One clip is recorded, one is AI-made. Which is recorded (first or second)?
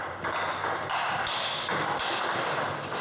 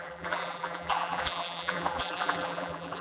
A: first